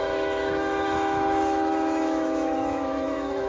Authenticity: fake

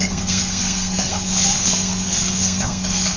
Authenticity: fake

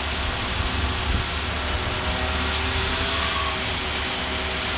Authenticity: real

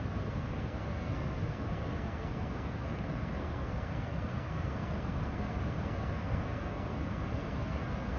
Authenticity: fake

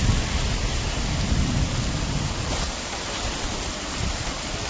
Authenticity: real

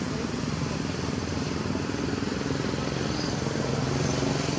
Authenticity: real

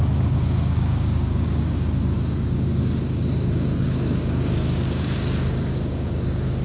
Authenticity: fake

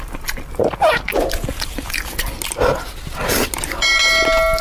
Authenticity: real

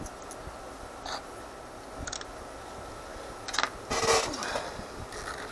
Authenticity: real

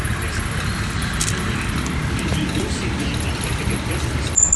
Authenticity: real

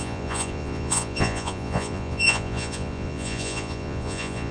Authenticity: fake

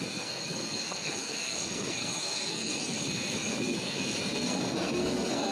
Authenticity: fake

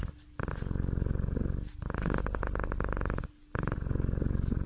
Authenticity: real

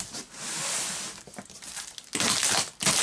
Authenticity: real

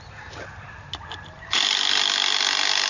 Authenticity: real